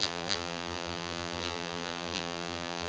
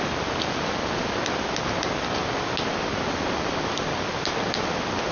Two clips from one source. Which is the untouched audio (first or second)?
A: second